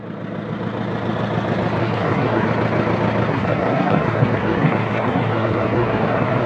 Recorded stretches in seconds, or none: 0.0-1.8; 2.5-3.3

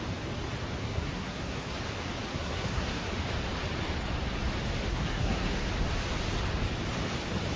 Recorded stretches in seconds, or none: 0.0-0.8; 1.7-2.3; 3.1-4.9; 5.7-7.6